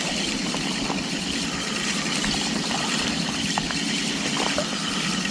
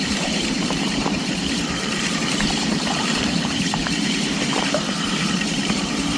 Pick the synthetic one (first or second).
second